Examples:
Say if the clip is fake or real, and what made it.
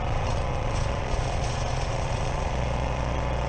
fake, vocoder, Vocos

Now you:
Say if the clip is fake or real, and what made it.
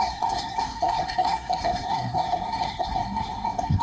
fake, codec, SNAC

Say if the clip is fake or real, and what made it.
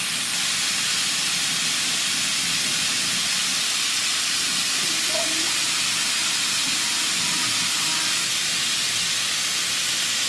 real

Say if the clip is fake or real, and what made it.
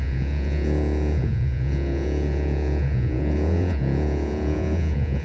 fake, vocoder, Vocos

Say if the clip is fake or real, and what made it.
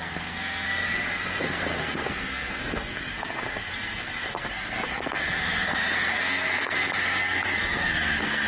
fake, codec, SNAC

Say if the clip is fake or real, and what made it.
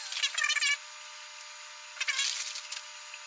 real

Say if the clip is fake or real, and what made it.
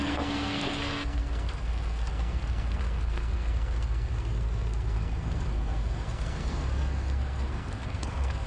fake, codec, SNAC